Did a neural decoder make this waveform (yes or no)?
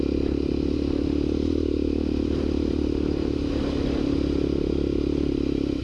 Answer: no